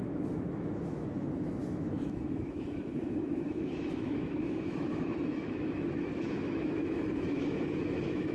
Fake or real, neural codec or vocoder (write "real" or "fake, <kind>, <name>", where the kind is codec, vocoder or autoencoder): fake, autoencoder, DAC-VAE